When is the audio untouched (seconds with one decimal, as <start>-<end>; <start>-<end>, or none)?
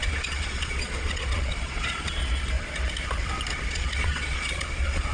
2.2-3.7